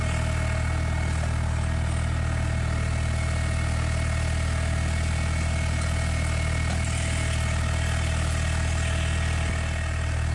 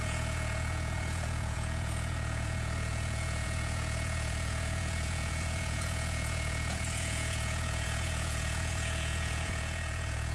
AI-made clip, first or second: second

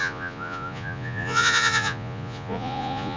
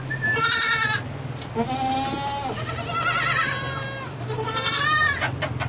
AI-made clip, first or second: first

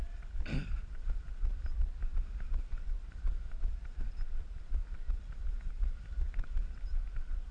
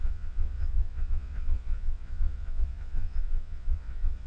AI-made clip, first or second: second